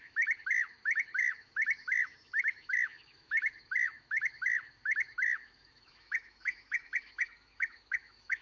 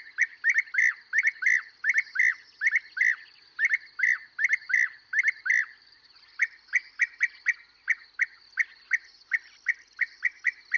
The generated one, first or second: first